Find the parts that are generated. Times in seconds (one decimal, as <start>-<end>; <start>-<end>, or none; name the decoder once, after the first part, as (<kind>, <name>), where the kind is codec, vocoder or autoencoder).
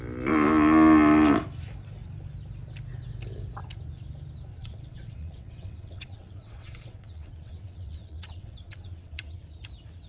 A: 4.5-9.4 (vocoder, WaveNeXt)